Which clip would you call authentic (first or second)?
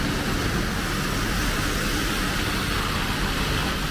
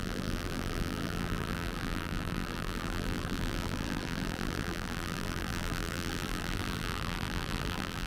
first